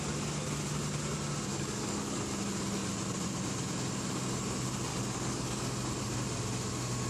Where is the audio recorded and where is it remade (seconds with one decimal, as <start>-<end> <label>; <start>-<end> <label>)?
0.0-1.5 recorded; 1.5-2.2 remade; 2.2-4.9 recorded; 4.9-5.6 remade; 5.6-7.1 recorded